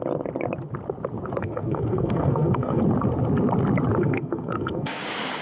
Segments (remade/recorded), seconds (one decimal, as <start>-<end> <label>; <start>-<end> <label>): 0.0-1.4 recorded; 1.4-2.8 remade; 2.8-4.0 recorded; 4.0-5.0 remade; 5.0-5.4 recorded